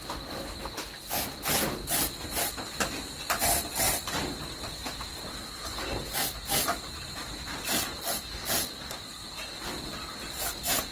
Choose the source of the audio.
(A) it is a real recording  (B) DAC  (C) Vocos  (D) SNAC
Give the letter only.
A